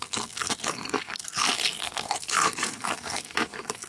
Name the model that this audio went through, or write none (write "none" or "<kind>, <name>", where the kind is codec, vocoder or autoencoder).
codec, SNAC